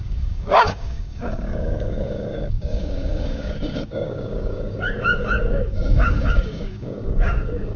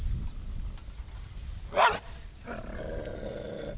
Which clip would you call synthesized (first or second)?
first